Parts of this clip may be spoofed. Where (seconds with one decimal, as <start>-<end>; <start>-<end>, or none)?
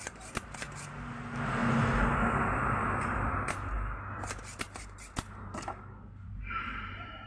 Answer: 1.6-2.6; 6.3-7.3